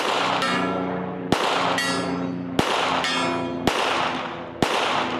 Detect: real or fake real